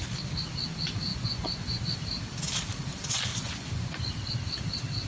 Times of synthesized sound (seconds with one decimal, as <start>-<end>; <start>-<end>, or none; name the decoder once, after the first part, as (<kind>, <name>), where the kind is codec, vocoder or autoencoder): 1.1-1.8 (vocoder, Vocos); 3.3-4.0